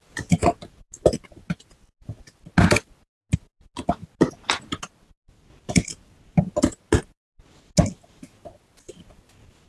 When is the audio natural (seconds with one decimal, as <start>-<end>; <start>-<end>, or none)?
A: 0.0-9.7